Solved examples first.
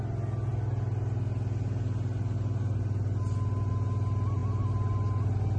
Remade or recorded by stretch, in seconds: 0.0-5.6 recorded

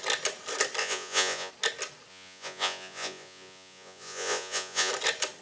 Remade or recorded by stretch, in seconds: 0.0-0.8 recorded; 0.8-1.5 remade; 1.5-2.1 recorded; 2.1-4.9 remade; 4.9-5.4 recorded

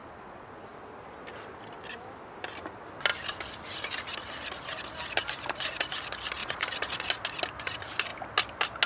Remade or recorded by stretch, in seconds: 0.0-0.6 remade; 0.6-6.4 recorded; 6.4-7.1 remade; 7.1-8.9 recorded

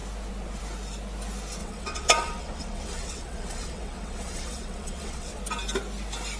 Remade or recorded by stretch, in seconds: 0.0-1.6 recorded; 1.6-5.4 remade; 5.4-6.4 recorded

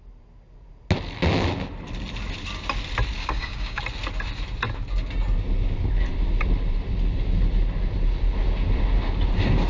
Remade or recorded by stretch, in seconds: 0.0-3.2 recorded; 3.2-3.8 remade; 3.8-9.7 recorded

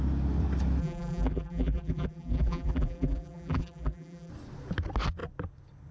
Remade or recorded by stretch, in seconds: 0.0-0.8 recorded; 0.8-4.3 remade; 4.3-5.9 recorded